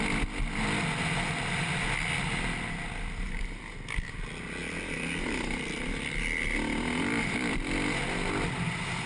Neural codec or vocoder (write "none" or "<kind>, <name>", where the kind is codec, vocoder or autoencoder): none